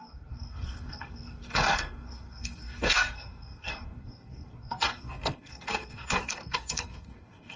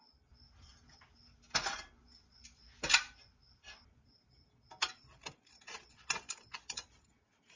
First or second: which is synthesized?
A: first